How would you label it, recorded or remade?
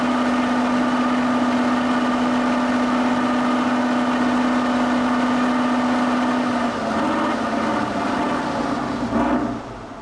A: recorded